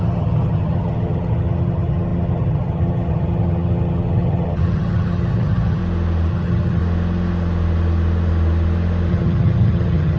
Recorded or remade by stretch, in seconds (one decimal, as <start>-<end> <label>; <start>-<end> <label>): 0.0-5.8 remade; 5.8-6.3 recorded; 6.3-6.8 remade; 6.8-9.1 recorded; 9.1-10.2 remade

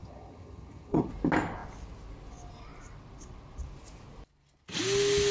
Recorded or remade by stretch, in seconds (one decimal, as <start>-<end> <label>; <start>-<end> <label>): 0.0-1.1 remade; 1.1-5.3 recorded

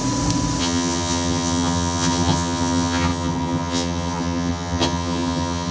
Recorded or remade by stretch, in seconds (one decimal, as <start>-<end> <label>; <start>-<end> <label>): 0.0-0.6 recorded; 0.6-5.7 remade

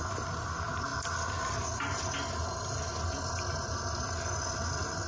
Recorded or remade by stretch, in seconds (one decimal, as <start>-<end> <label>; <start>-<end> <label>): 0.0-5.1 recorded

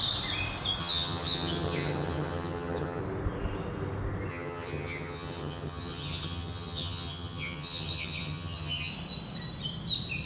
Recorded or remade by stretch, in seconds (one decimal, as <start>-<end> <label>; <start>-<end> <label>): 0.0-0.8 recorded; 0.8-3.0 remade; 3.0-4.3 recorded; 4.3-8.9 remade; 8.9-10.3 recorded

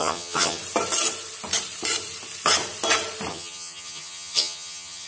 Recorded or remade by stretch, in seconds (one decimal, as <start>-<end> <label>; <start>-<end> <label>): 0.0-0.6 remade; 0.6-3.3 recorded; 3.3-5.1 remade